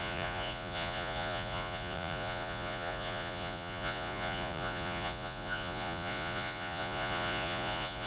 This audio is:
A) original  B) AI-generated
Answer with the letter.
B